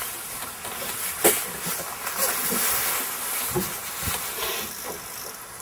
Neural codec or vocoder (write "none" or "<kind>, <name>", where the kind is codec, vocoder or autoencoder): none